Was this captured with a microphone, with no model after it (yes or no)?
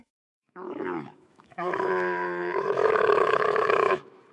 no